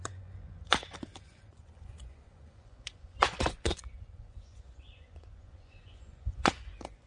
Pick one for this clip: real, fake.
fake